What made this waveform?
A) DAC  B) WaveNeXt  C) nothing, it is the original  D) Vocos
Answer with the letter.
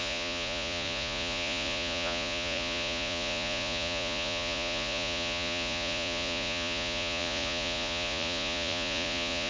D